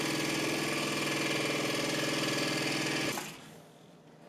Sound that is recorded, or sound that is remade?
recorded